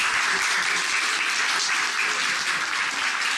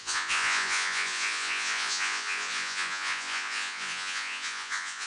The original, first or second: first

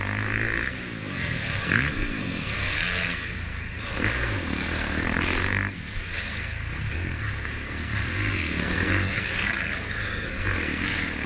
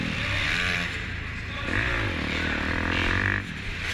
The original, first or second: second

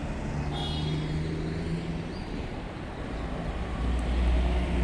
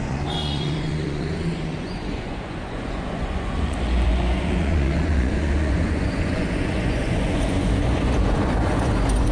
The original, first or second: first